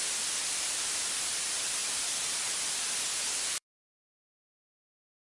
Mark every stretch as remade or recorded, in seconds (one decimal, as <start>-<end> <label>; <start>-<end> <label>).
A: 0.0-5.4 recorded